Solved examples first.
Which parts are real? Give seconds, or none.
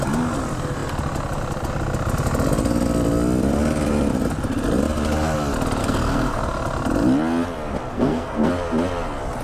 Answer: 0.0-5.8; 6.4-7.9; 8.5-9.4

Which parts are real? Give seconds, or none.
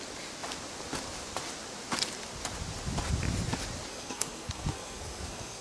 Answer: 0.0-3.9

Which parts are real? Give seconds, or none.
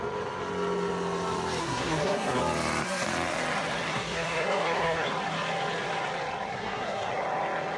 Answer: 0.0-1.6; 2.4-3.9; 5.1-6.5; 7.1-7.8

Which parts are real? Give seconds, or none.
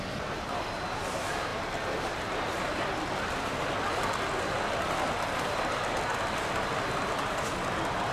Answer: 0.0-8.1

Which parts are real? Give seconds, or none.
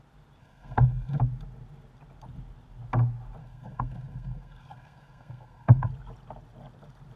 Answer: 0.0-0.4; 1.2-3.4; 5.9-7.2